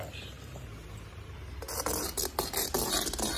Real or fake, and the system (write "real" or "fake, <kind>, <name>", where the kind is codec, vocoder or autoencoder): real